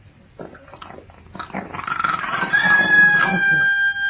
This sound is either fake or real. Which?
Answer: real